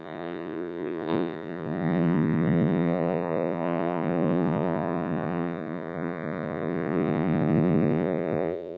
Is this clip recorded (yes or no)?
no